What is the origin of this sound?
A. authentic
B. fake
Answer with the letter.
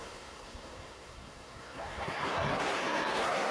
B